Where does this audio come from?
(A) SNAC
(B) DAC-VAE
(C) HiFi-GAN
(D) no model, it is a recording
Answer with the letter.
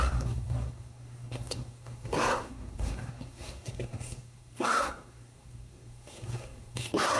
A